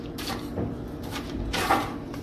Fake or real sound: real